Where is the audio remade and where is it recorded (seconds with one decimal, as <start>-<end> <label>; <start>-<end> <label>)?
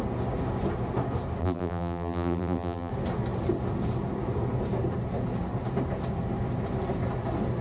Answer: 0.0-1.4 recorded; 1.4-2.9 remade; 2.9-7.6 recorded